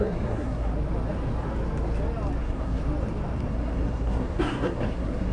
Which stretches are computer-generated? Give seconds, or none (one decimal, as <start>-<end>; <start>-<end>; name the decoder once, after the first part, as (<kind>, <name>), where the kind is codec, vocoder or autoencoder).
0.0-0.7 (codec, SNAC); 2.4-2.8; 3.5-5.3